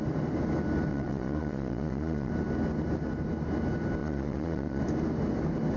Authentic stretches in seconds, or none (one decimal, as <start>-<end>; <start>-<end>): 0.0-0.9; 2.3-4.0; 4.8-5.8